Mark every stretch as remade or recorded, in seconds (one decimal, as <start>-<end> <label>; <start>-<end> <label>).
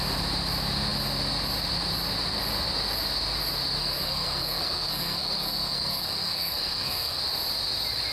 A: 0.0-3.8 recorded; 3.8-7.2 remade; 7.2-8.1 recorded